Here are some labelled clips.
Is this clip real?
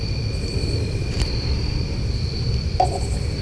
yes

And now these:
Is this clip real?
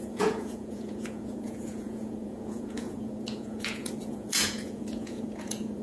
no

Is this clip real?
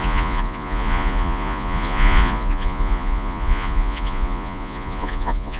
no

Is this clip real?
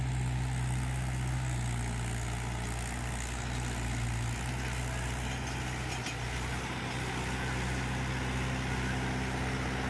yes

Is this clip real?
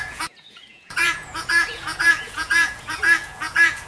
no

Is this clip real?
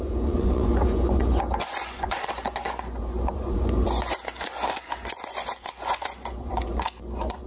no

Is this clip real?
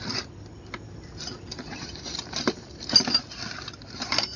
yes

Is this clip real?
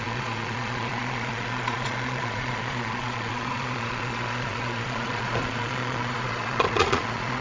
no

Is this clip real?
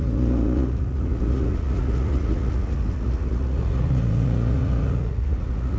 no